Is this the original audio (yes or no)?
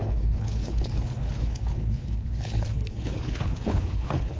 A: no